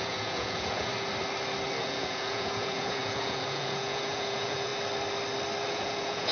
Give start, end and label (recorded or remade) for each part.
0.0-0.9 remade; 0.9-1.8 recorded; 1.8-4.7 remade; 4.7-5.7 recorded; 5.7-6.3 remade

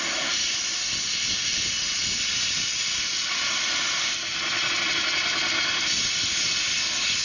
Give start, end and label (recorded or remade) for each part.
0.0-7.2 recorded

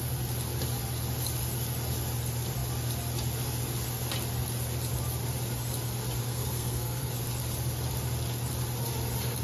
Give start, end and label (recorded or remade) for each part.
0.0-6.2 recorded; 6.2-7.1 remade; 7.1-9.4 recorded